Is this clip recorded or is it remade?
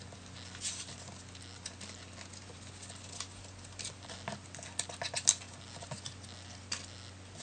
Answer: recorded